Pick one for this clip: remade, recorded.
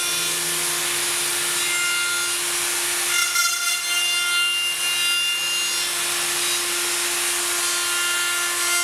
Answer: recorded